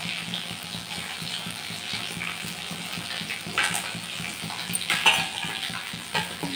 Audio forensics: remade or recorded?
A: remade